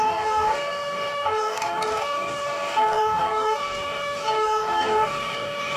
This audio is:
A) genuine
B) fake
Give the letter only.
B